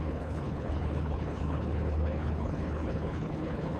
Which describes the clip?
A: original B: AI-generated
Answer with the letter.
B